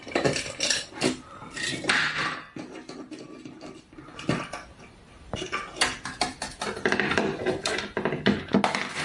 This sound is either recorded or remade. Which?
recorded